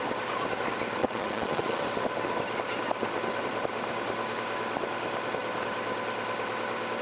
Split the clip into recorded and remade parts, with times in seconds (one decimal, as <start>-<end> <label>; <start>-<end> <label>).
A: 0.0-1.0 recorded; 1.0-1.8 remade; 1.8-7.0 recorded